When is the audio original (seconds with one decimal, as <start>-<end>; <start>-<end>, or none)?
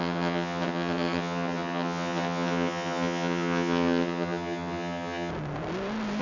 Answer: 5.3-6.2